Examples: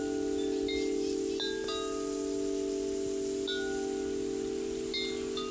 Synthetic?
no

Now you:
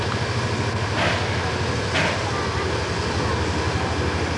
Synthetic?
no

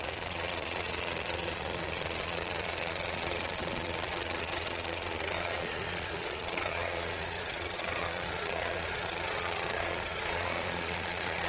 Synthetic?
yes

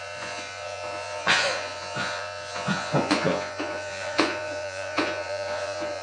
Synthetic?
yes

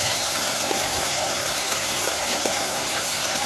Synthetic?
yes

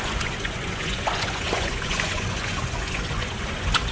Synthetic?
yes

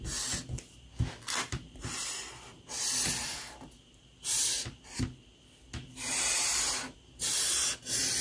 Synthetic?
no